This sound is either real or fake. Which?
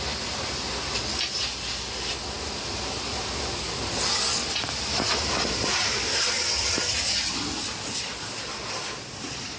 real